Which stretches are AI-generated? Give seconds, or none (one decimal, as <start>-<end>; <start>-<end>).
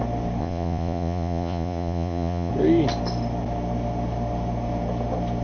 0.4-2.5